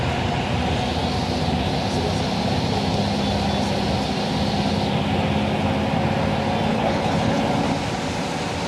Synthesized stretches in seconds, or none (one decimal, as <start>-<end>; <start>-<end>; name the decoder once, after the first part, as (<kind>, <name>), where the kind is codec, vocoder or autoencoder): 6.7-7.4 (codec, HILCodec)

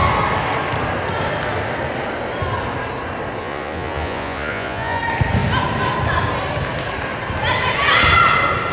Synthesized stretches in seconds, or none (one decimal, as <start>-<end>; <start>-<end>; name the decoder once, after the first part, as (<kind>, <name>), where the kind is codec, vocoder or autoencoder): 3.4-5.0 (vocoder, Vocos)

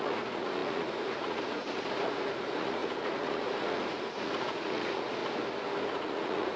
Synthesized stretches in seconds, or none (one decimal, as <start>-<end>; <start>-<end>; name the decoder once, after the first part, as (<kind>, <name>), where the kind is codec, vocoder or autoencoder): 0.0-5.2 (vocoder, Vocos); 5.8-6.6

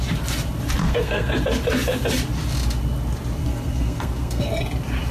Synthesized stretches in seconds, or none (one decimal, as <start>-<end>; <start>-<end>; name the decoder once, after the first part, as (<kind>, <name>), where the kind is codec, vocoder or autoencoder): 0.8-1.3 (codec, SNAC); 3.4-4.5

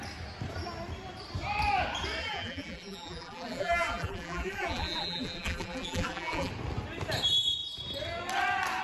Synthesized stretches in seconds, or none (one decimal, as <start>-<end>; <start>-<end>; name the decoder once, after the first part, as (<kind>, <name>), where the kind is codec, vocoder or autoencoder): 2.2-6.5 (vocoder, BigVGAN v2)

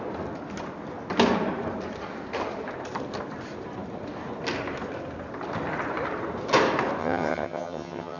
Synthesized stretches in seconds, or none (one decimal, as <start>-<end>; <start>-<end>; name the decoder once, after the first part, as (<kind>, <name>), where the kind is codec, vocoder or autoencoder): 7.0-8.2 (vocoder, HiFi-GAN)

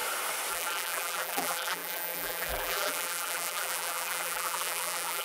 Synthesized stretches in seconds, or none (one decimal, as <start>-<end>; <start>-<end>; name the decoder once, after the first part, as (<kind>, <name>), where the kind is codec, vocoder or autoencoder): 0.5-5.2 (vocoder, BigVGAN v2)

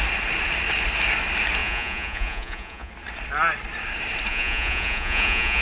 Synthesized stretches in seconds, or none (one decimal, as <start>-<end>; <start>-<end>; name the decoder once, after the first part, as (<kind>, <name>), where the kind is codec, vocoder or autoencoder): 1.6-2.9 (vocoder, Vocos); 4.3-5.6